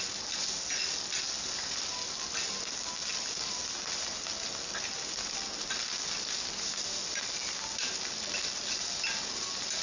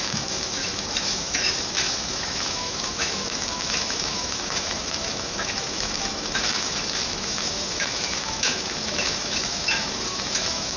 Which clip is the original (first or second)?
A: first